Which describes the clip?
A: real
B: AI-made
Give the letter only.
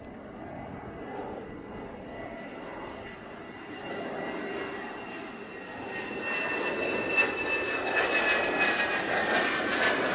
A